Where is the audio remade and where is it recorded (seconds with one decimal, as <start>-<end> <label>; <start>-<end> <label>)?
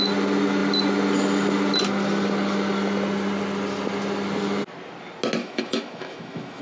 0.0-5.4 recorded; 5.4-6.6 remade